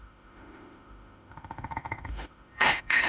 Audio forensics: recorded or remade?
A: remade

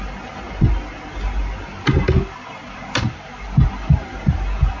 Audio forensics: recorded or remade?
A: recorded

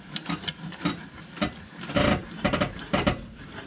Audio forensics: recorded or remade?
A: remade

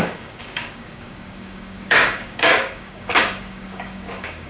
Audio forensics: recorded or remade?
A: remade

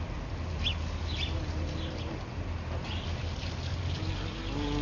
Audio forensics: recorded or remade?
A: recorded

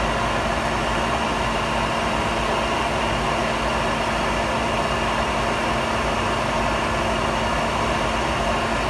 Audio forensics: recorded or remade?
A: recorded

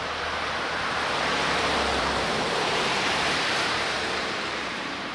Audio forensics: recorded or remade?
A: remade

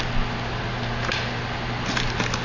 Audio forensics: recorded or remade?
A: recorded